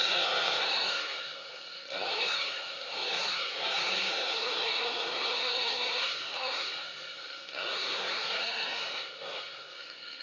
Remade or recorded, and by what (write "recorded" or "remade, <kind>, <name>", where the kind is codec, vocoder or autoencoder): remade, codec, SNAC